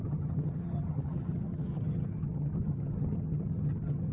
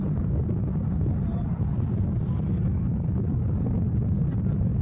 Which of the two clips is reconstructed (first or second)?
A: first